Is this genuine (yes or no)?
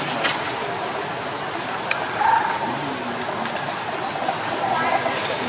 yes